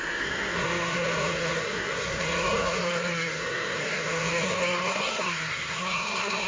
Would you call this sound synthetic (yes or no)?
yes